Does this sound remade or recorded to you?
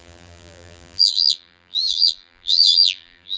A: remade